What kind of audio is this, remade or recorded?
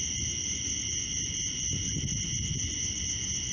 recorded